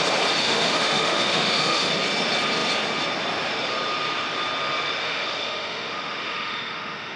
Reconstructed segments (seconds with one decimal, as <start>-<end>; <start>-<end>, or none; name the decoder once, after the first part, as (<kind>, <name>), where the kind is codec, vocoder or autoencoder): 0.4-1.9 (autoencoder, DAC-VAE); 5.0-7.2